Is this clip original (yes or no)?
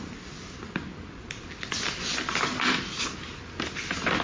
yes